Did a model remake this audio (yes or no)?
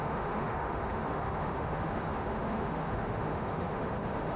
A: yes